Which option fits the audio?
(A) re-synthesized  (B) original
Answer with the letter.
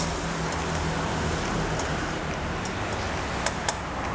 B